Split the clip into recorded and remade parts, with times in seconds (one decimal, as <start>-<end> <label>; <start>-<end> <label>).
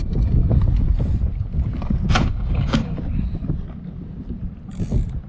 0.0-2.2 recorded; 2.2-3.0 remade; 3.0-5.3 recorded